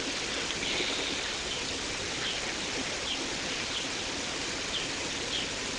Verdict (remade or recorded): recorded